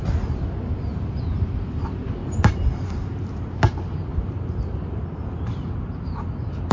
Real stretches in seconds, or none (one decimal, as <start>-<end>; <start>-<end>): 0.0-6.7